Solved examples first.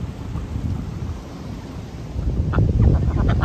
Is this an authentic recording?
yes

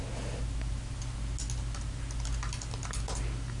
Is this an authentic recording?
yes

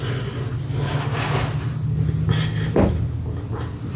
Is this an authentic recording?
yes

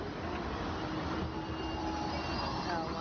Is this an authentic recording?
yes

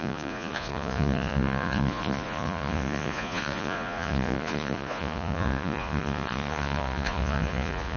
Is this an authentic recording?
no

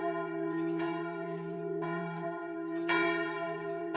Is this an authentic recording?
no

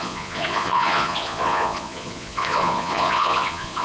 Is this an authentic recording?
no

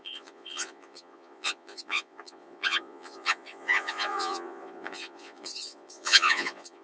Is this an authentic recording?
no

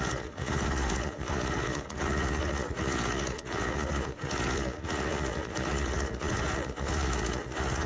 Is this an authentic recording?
no